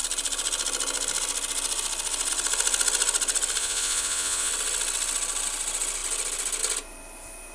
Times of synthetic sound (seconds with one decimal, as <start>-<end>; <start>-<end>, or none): 3.6-4.5